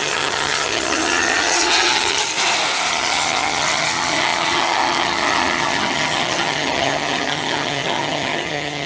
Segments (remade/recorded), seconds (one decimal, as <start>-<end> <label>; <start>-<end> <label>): 0.0-2.2 remade; 2.2-2.9 recorded; 2.9-8.9 remade